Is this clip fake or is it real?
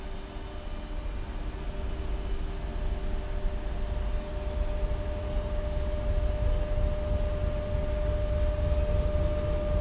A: real